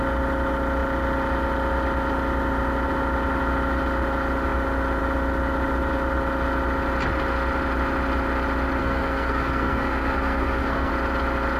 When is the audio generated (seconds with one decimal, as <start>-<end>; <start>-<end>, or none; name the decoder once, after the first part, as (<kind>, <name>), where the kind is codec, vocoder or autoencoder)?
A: 8.8-10.9 (codec, SNAC)